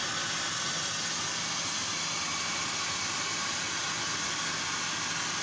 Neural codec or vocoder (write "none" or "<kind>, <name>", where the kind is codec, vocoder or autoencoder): none